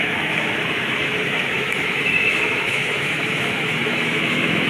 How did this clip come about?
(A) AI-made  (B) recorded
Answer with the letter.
A